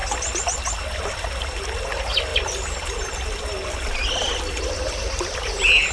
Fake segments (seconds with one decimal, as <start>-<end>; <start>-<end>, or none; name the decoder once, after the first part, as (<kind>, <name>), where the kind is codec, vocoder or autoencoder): 2.3-4.1 (vocoder, BigVGAN v2)